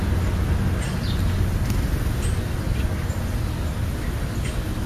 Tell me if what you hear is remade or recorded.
recorded